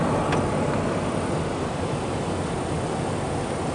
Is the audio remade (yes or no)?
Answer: no